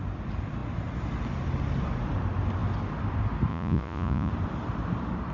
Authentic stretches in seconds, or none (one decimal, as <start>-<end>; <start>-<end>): 0.0-3.5; 4.3-5.3